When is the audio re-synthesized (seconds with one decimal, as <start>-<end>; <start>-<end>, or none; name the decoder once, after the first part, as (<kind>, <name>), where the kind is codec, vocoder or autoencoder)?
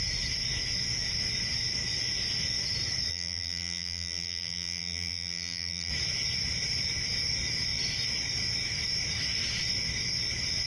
3.1-5.9 (vocoder, BigVGAN v2)